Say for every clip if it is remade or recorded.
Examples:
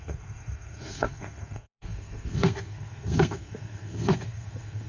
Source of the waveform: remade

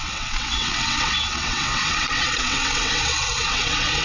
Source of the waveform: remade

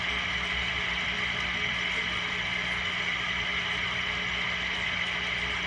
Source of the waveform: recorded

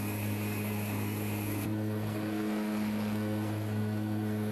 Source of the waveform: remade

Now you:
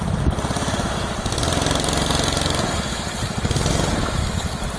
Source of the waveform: recorded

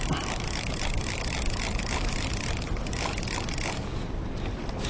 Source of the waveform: recorded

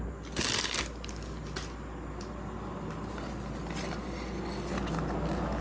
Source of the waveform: recorded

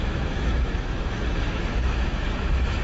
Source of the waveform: remade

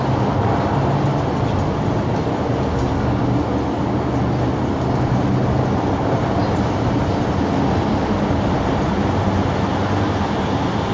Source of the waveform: recorded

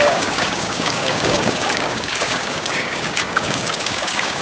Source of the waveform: remade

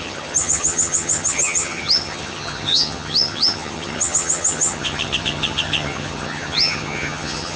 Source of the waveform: remade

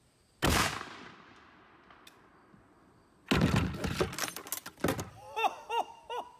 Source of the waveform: recorded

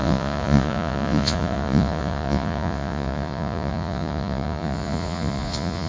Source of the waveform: remade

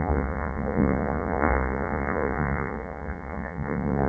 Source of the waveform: remade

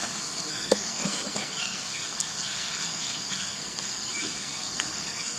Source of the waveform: remade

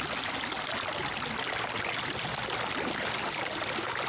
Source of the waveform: recorded